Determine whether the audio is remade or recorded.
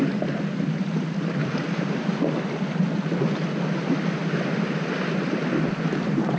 recorded